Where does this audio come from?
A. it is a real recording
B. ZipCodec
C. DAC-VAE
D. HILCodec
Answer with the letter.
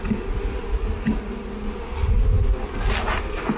A